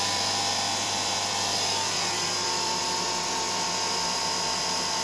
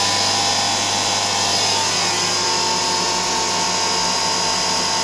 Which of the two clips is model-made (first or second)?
first